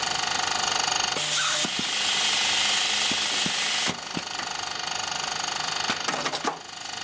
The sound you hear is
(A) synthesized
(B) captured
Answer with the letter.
B